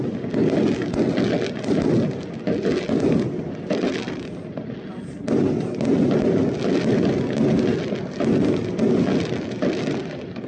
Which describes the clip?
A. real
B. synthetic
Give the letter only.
A